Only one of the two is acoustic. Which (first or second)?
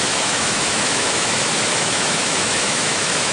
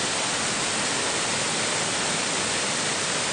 second